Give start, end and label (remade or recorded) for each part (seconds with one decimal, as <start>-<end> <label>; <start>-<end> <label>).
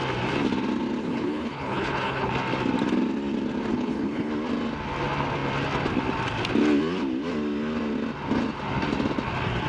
0.0-1.0 recorded; 1.0-2.3 remade; 2.3-3.7 recorded; 3.7-4.3 remade; 4.3-9.7 recorded